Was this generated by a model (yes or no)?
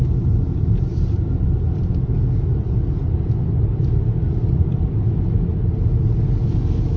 no